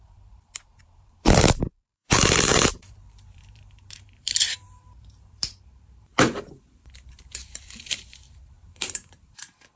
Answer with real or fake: fake